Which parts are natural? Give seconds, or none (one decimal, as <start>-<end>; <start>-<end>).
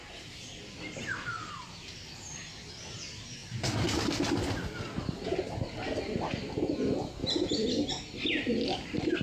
0.0-9.2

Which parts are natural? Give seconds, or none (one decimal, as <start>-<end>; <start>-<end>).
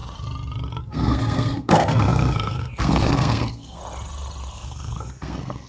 0.0-0.8; 3.8-4.5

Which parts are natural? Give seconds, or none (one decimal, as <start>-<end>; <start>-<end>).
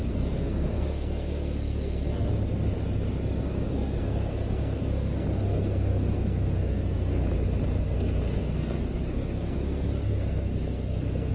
2.3-3.4; 7.2-7.8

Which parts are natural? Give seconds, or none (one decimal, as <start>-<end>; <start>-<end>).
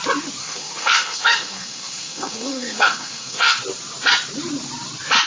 0.0-0.4; 3.6-5.3